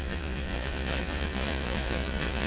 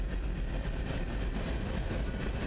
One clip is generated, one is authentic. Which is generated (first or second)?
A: first